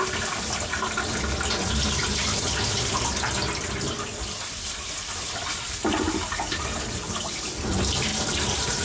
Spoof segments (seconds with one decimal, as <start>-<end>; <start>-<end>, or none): 8.1-8.8